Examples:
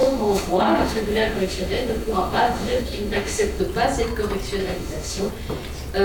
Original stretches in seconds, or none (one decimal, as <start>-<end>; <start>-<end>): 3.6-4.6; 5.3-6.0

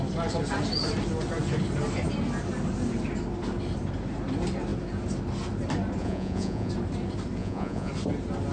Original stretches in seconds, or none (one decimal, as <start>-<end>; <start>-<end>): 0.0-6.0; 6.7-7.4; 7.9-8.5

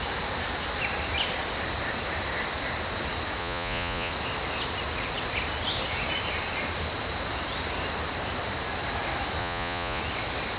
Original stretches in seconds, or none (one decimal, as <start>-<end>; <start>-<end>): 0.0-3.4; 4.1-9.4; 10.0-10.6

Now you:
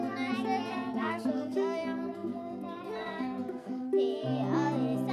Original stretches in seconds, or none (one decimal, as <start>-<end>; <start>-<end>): 0.0-0.7; 3.8-5.1

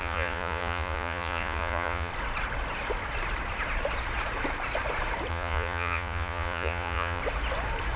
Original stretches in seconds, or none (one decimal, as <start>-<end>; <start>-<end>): 2.1-5.3; 7.2-8.0

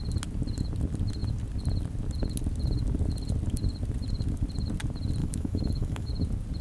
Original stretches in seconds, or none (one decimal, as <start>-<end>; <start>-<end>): 0.0-5.2; 6.1-6.6

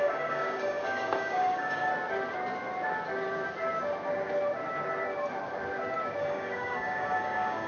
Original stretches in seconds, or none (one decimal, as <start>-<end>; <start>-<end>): 1.9-6.2

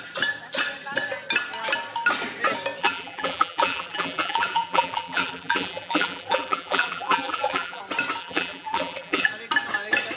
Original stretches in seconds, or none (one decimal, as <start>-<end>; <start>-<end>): 0.0-2.8; 7.8-8.2; 9.3-10.2